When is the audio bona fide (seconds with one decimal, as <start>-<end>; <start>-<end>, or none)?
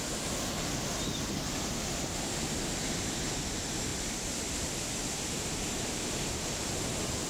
0.0-7.3